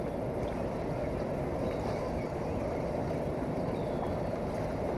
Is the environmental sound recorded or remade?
recorded